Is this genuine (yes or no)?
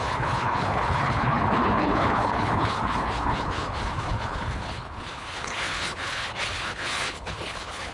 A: no